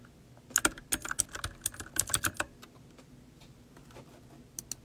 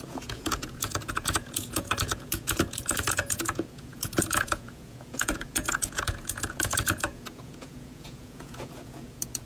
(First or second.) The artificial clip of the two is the second